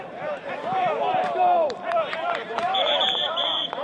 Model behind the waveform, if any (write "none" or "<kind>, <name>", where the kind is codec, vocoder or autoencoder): vocoder, BigVGAN v2